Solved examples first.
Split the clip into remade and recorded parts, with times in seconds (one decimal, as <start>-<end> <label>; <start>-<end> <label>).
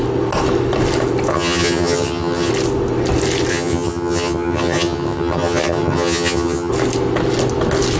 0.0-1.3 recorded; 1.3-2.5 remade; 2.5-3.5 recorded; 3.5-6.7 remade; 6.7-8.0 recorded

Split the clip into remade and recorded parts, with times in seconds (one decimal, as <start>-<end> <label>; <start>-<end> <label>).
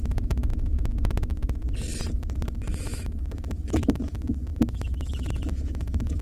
0.0-0.5 remade; 0.5-2.1 recorded; 2.1-6.2 remade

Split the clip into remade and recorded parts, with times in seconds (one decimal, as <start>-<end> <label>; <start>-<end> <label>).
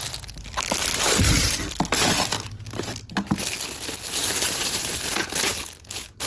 0.0-4.2 recorded; 4.2-4.9 remade; 4.9-6.3 recorded